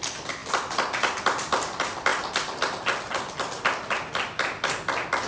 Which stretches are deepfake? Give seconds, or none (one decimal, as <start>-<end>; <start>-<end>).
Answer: none